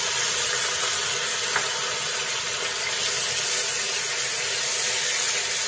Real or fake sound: real